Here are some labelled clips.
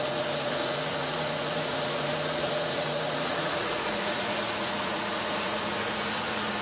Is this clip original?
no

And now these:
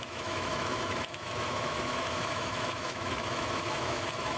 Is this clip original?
no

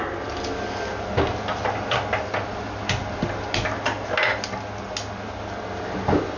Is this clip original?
yes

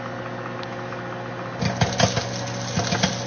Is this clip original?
yes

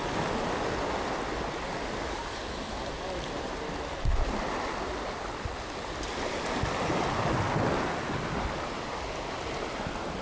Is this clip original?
yes